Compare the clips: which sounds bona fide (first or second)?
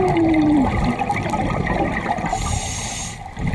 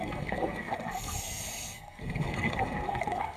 first